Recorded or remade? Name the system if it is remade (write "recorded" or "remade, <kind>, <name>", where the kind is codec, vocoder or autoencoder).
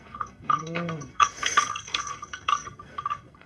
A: remade, codec, SNAC